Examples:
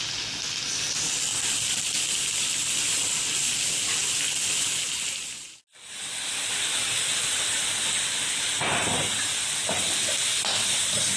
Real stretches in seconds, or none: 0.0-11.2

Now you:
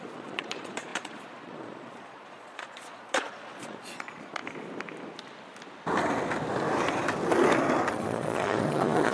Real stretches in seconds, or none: 4.4-7.9